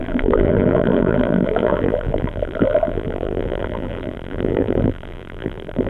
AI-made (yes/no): yes